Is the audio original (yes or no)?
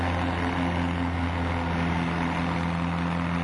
yes